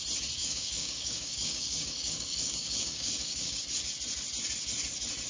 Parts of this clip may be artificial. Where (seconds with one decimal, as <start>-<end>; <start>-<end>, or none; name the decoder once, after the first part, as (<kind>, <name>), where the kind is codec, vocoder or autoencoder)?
0.4-3.6 (codec, DAC)